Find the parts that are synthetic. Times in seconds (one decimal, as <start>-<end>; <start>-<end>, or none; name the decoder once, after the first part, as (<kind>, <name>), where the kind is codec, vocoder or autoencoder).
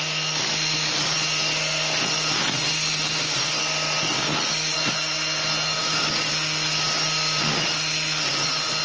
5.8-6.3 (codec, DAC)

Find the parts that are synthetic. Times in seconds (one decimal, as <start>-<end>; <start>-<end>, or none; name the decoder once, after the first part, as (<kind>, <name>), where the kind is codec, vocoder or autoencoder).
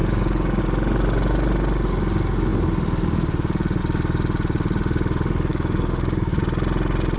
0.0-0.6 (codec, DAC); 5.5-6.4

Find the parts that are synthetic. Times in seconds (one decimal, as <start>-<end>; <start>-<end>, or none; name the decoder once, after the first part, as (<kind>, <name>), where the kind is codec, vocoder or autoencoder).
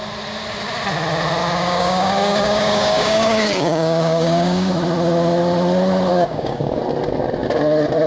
1.4-4.7 (codec, DAC); 6.1-6.8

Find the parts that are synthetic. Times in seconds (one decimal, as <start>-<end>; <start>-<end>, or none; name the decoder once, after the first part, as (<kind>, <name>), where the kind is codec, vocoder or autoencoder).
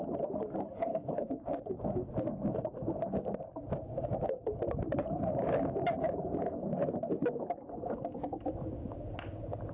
0.9-2.1 (codec, DAC)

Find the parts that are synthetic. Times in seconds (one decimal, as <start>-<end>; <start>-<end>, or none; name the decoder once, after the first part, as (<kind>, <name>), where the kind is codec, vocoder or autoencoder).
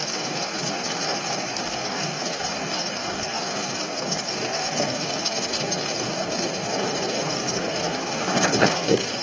0.0-9.2 (codec, DAC)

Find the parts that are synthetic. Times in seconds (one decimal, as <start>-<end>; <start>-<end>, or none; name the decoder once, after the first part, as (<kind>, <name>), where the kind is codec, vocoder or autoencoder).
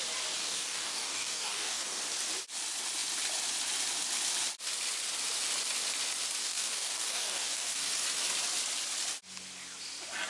0.4-2.0 (codec, DAC); 6.4-7.9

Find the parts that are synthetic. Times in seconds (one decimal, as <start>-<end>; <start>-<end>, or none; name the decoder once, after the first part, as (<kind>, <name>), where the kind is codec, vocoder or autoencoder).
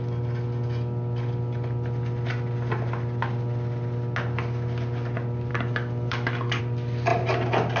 5.5-6.6 (codec, DAC)